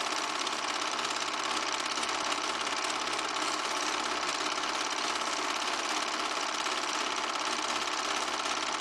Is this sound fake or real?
real